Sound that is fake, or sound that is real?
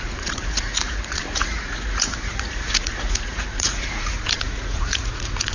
fake